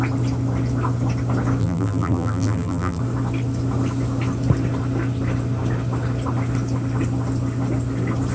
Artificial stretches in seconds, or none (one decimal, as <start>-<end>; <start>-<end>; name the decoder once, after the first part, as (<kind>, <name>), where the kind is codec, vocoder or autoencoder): 1.6-3.0 (vocoder, BigVGAN v2)